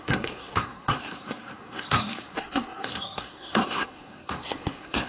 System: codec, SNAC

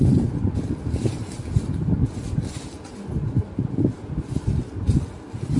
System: none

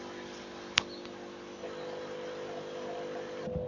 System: none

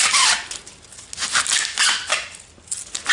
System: none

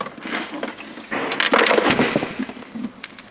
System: none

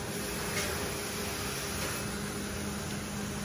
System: none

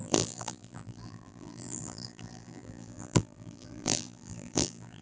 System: vocoder, BigVGAN v2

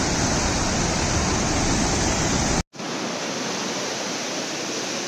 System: none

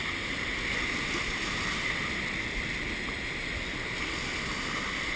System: none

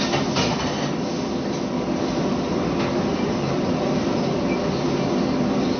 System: none